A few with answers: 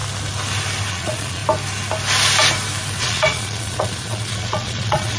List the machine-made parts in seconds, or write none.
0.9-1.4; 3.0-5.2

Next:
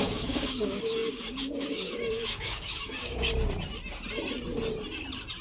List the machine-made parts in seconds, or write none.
0.0-3.3

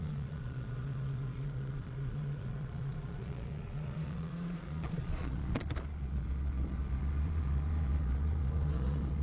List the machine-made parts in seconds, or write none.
0.0-9.2